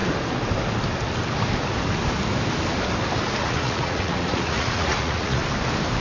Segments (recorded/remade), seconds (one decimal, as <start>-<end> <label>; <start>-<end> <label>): 0.0-3.4 recorded; 3.4-5.4 remade; 5.4-6.0 recorded